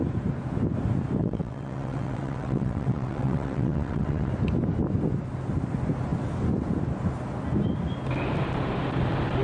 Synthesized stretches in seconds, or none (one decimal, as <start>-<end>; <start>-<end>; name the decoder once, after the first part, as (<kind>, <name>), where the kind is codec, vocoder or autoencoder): 1.2-4.3 (vocoder, WaveNeXt)